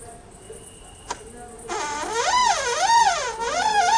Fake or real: real